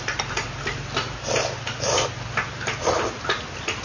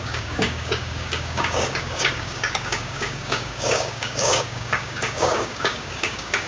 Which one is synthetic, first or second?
second